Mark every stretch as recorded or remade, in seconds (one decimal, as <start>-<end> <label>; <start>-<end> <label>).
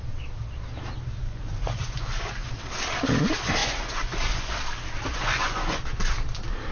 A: 0.0-1.2 recorded; 1.2-2.5 remade; 2.5-3.6 recorded; 3.6-4.5 remade; 4.5-5.1 recorded; 5.1-5.8 remade; 5.8-6.7 recorded